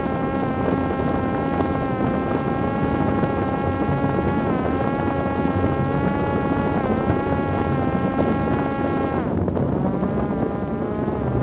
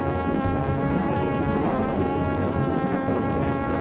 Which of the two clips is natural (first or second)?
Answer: first